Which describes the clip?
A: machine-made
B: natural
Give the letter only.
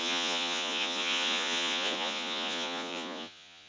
A